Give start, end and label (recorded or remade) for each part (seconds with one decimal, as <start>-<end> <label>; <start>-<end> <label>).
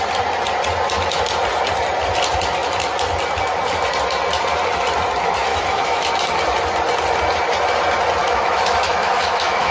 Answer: 0.0-5.5 recorded; 5.5-6.1 remade; 6.1-8.2 recorded; 8.2-9.7 remade